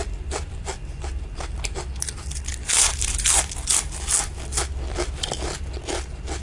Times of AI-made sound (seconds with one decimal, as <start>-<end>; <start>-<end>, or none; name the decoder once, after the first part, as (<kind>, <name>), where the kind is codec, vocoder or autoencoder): 2.6-3.4 (vocoder, BigVGAN v2)